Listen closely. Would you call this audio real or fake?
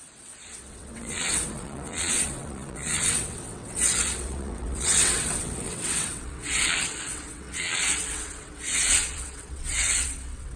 fake